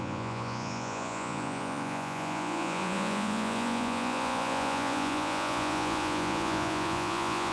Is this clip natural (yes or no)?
no